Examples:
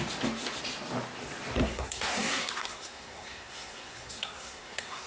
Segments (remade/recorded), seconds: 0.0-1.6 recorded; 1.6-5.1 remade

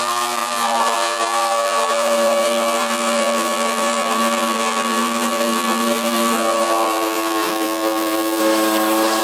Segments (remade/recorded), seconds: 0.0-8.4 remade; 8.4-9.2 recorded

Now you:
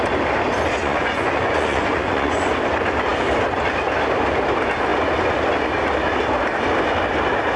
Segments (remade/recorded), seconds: 0.0-0.8 recorded; 0.8-2.6 remade; 2.6-7.6 recorded

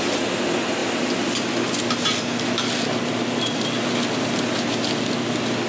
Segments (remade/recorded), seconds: 0.0-5.7 recorded